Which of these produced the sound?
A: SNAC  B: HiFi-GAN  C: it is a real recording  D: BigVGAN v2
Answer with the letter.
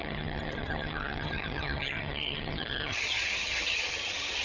B